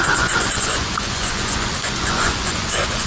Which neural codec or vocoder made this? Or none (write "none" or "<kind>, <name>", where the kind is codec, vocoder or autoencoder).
vocoder, Vocos